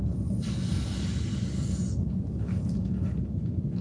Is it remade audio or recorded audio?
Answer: recorded